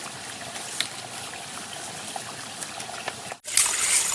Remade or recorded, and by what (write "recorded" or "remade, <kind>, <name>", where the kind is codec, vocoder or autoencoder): recorded